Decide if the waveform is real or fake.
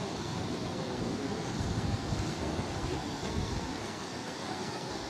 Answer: fake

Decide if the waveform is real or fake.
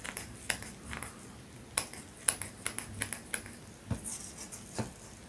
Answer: real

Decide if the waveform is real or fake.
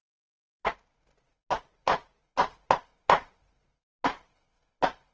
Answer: real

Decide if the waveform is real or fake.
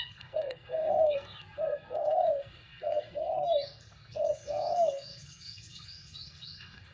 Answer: fake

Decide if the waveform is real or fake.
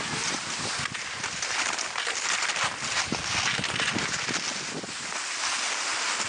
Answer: real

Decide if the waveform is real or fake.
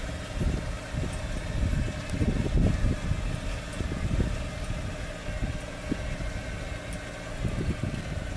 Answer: real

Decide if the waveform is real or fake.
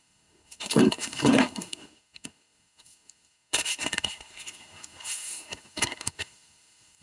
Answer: fake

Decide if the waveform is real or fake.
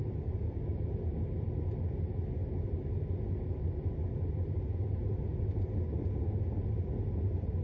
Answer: real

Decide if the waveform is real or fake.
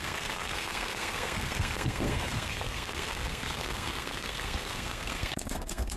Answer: fake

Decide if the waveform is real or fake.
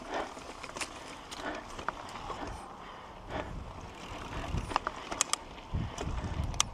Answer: real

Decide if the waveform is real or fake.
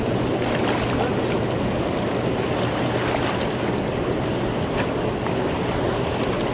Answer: real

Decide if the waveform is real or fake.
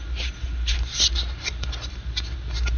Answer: real